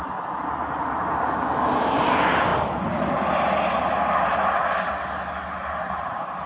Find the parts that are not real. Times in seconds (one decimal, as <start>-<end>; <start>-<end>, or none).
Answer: 4.3-5.0